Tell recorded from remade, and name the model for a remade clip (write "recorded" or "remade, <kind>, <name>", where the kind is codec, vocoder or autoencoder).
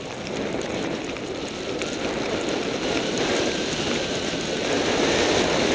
recorded